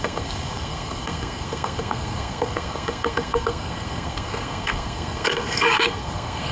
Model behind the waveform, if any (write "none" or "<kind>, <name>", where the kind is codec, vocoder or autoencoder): codec, SNAC